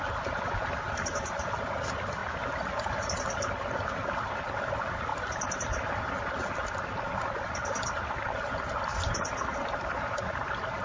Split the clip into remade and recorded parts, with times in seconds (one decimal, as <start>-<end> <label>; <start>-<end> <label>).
0.0-10.8 recorded